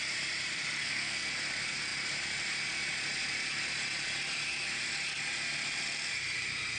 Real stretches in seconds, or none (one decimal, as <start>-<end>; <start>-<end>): 0.0-0.8; 1.3-6.8